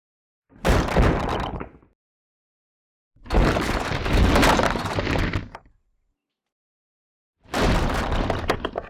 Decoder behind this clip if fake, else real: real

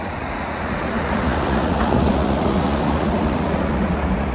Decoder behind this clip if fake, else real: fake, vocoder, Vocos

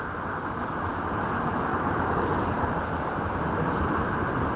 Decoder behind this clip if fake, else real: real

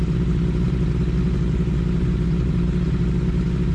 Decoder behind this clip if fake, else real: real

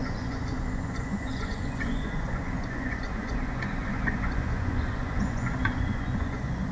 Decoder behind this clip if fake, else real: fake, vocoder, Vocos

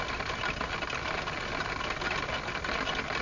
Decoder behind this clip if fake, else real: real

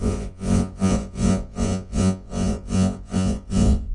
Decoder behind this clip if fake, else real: fake, vocoder, Vocos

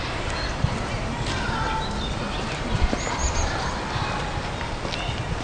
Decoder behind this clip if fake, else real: real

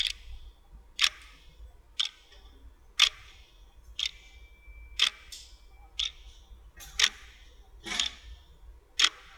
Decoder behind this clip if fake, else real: real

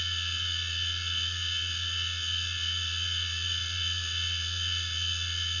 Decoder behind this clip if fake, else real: fake, vocoder, Vocos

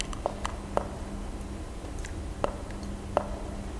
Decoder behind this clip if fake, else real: real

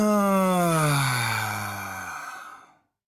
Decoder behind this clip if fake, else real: real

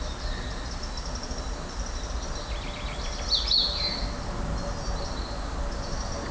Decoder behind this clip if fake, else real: real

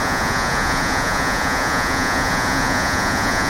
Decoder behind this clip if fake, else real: fake, vocoder, Vocos